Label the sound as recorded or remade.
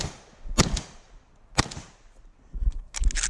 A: recorded